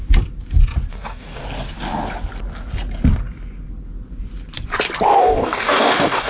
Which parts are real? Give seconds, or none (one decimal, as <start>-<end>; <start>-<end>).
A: 0.0-0.9; 1.4-5.2